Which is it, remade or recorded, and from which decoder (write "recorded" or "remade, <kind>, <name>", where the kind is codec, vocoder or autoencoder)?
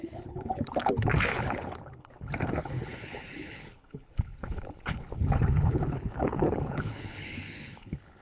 remade, codec, HILCodec